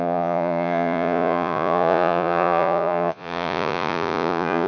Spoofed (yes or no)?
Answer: yes